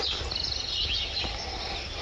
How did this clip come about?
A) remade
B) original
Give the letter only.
B